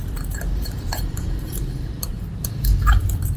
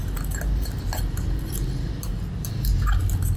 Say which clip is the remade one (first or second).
first